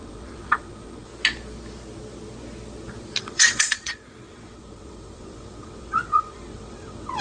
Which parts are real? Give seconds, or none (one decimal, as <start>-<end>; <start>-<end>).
1.1-3.2